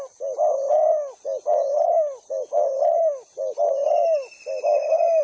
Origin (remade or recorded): recorded